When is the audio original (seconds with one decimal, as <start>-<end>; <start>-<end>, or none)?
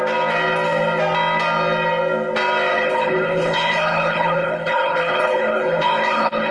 0.0-2.7